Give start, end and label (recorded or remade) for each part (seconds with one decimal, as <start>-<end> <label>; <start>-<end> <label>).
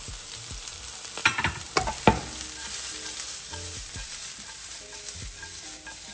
0.0-1.2 recorded; 1.2-4.9 remade; 4.9-6.1 recorded